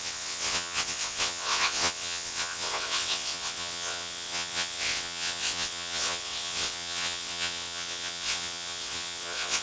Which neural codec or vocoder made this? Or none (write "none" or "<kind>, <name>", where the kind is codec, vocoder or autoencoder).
vocoder, WaveNeXt